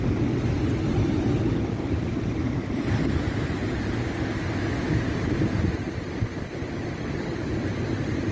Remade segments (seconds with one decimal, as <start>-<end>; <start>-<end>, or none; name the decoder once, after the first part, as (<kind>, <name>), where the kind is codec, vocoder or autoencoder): none